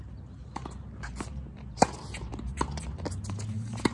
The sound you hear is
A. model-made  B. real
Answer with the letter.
B